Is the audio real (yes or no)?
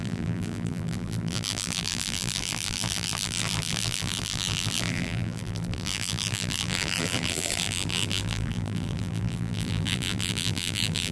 no